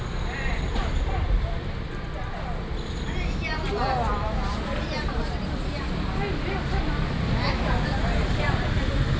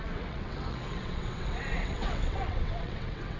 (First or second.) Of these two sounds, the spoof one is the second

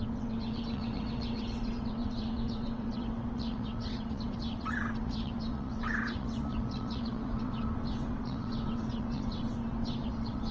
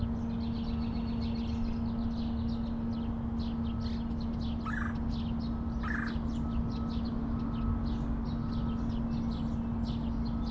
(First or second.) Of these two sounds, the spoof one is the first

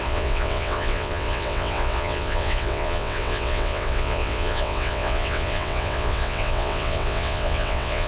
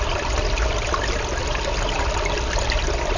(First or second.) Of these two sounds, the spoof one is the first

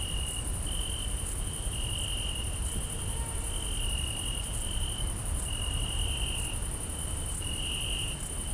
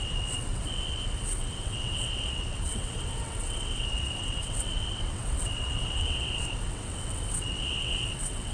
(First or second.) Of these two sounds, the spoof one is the second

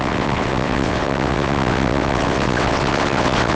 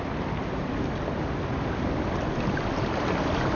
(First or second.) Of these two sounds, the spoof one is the first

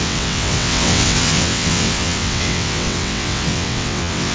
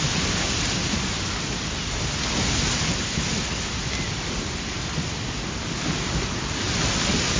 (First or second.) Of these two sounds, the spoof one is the first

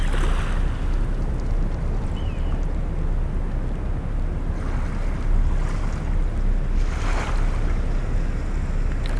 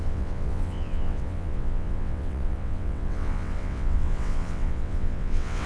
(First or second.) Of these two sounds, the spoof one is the second